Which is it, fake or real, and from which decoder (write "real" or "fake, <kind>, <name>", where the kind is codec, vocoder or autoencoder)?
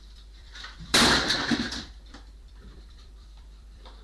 fake, vocoder, BigVGAN v2